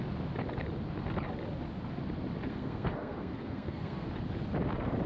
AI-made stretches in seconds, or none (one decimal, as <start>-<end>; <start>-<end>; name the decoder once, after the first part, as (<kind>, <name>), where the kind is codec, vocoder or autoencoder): 2.5-4.1 (codec, SNAC)